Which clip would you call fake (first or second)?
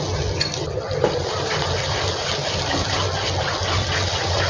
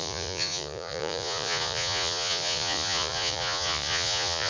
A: second